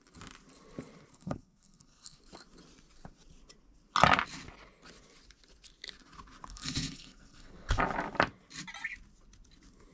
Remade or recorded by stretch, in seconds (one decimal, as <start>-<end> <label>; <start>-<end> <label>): 0.0-1.1 recorded; 1.1-2.2 remade; 2.2-6.5 recorded; 6.5-7.7 remade; 7.7-9.9 recorded